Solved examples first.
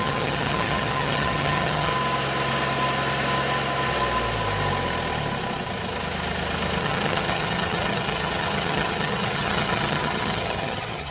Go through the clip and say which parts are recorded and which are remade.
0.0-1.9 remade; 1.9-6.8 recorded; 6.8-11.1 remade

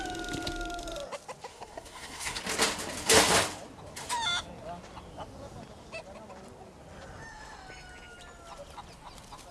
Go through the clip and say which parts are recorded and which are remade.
0.0-1.5 recorded; 1.5-2.4 remade; 2.4-9.5 recorded